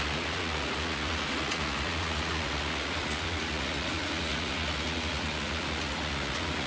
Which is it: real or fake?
fake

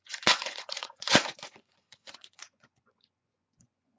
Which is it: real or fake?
fake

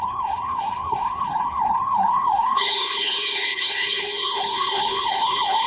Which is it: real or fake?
fake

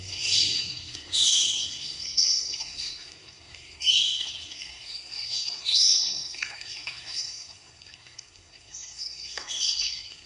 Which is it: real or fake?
fake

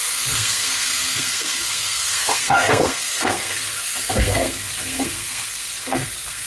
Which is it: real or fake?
fake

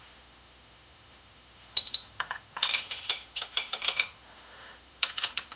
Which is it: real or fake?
fake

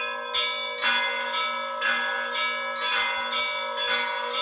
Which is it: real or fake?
real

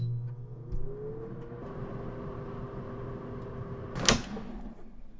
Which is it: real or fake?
real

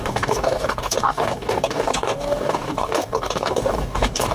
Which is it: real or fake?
fake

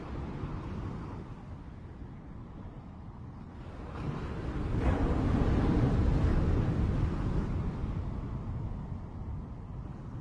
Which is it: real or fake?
real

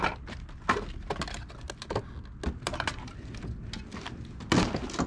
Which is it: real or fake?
real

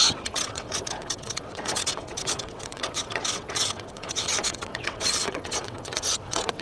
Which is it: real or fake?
fake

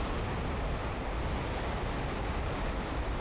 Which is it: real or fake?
real